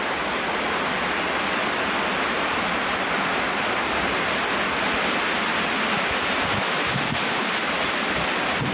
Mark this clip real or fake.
real